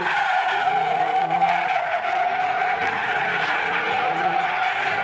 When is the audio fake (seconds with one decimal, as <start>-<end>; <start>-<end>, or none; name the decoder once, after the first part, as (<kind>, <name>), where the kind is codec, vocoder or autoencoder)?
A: 0.0-5.0 (vocoder, Vocos)